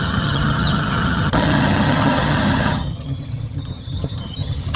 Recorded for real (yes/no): no